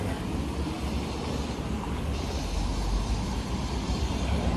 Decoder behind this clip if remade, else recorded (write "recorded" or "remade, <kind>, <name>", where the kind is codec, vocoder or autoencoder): recorded